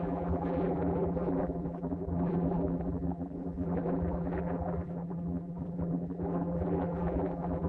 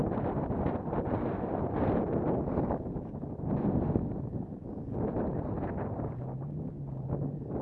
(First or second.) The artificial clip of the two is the first